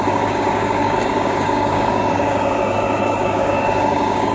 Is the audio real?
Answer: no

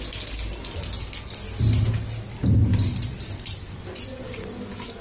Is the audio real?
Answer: yes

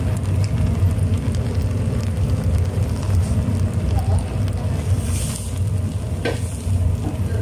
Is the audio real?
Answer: yes